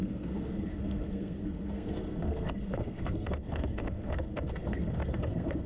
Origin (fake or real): fake